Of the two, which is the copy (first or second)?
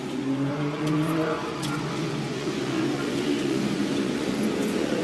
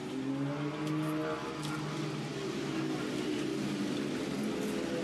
first